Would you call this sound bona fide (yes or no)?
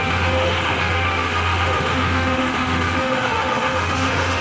no